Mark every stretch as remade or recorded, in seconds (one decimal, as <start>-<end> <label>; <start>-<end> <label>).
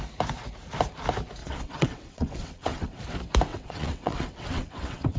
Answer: 0.0-1.4 recorded; 1.4-3.0 remade; 3.0-3.5 recorded; 3.5-5.2 remade